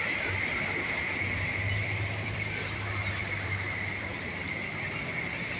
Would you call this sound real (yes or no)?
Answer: no